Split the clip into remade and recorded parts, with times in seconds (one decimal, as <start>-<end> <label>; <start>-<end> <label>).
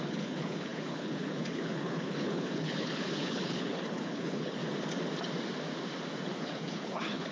0.0-4.6 remade; 4.6-6.4 recorded; 6.4-7.3 remade